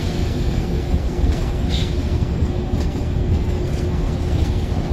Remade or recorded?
remade